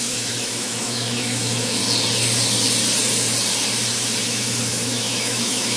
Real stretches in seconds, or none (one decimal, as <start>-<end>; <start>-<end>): 1.8-4.2